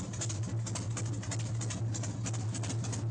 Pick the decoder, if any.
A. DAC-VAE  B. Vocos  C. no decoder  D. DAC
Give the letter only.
C